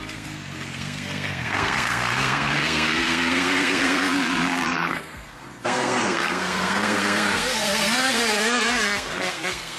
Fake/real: fake